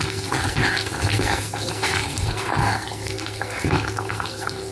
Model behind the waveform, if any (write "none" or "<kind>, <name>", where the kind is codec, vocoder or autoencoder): codec, SNAC